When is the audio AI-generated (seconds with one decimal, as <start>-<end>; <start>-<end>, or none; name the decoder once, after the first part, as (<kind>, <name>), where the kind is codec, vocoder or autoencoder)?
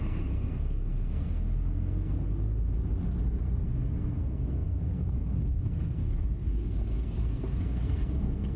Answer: 0.0-2.3 (codec, SNAC); 3.4-8.6